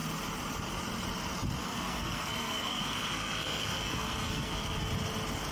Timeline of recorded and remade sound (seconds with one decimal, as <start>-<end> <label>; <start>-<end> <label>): 0.0-1.6 recorded; 1.6-4.9 remade; 4.9-5.5 recorded